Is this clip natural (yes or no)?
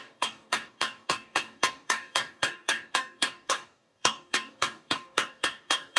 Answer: no